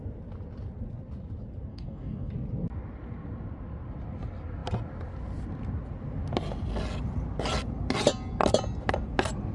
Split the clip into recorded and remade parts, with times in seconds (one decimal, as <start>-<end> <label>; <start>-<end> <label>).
0.0-1.7 recorded; 1.7-2.3 remade; 2.3-9.5 recorded